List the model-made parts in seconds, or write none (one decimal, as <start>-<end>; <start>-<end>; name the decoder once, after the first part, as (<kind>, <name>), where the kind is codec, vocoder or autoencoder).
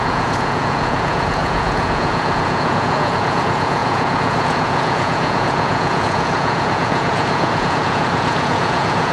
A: 0.0-9.1 (vocoder, Vocos)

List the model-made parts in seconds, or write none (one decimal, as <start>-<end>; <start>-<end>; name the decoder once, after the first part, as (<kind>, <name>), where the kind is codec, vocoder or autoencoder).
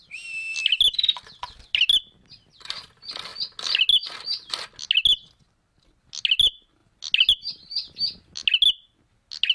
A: none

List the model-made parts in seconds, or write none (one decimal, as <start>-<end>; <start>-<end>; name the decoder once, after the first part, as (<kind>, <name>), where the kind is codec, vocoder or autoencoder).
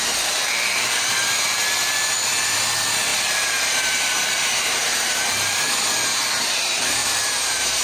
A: 3.1-5.7 (vocoder, BigVGAN v2); 7.0-7.8